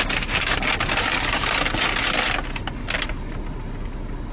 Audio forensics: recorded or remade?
recorded